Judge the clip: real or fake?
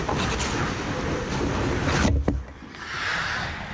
real